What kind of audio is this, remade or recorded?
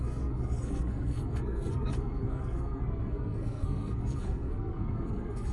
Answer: remade